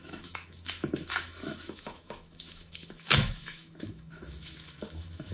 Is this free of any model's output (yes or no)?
no